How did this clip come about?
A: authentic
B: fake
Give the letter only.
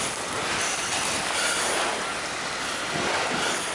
A